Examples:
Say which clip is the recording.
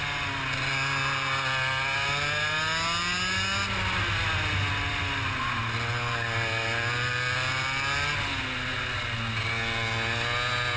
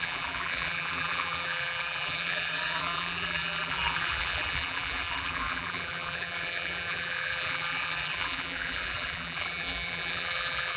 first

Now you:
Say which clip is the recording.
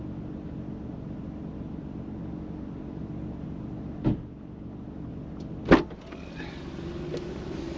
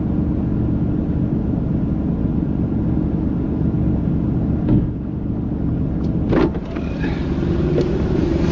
first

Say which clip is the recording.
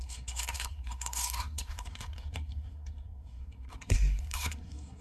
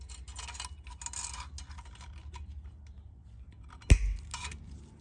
second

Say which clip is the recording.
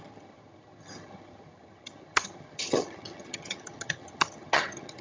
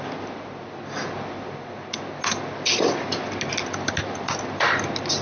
second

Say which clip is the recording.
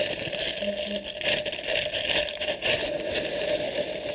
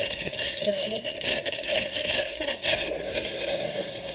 first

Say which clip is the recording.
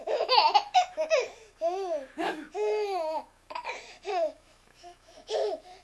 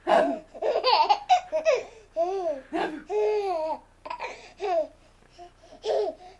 second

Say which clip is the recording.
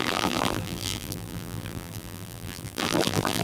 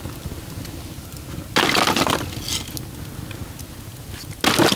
second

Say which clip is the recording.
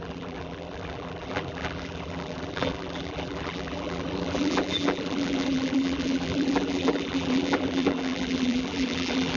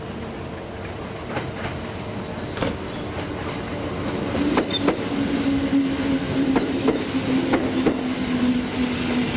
second